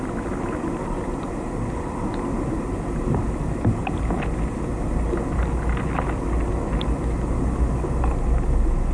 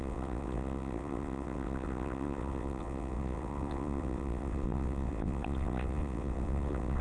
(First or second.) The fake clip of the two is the second